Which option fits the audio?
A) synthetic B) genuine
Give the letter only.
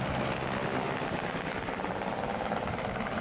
B